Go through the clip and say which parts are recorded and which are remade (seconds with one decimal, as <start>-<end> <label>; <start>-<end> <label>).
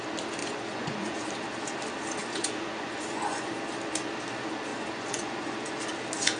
0.0-0.4 recorded; 0.4-1.3 remade; 1.3-2.2 recorded; 2.2-3.5 remade; 3.5-4.7 recorded; 4.7-5.8 remade; 5.8-6.4 recorded